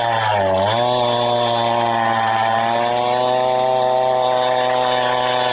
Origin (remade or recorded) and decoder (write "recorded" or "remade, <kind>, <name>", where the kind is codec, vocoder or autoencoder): recorded